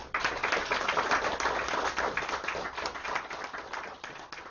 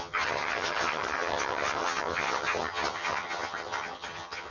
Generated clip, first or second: second